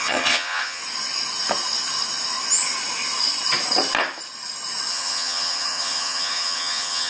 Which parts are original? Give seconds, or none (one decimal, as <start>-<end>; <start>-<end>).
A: 0.8-4.9